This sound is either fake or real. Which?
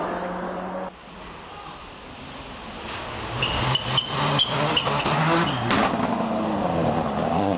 real